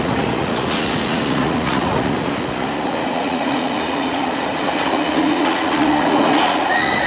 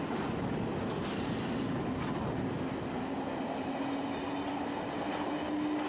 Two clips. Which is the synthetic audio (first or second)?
first